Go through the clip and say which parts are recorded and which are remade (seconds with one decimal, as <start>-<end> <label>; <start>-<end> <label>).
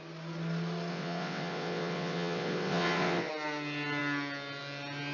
0.0-0.9 recorded; 0.9-3.3 remade; 3.3-5.1 recorded